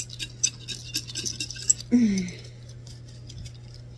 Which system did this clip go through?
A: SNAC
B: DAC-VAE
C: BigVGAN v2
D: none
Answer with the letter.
D